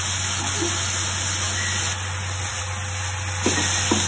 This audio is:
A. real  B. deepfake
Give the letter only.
A